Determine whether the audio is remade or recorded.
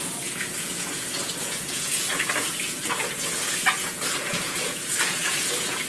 remade